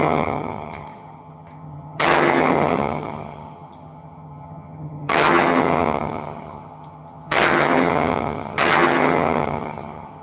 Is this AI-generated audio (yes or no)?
yes